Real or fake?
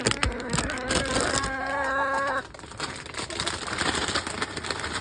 real